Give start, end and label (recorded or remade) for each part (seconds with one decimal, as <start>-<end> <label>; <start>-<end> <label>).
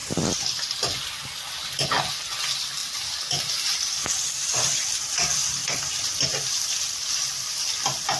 0.0-1.5 remade; 1.5-5.6 recorded; 5.6-6.9 remade; 6.9-8.2 recorded